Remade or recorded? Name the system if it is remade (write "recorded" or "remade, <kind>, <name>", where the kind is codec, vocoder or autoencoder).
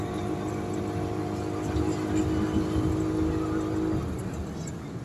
recorded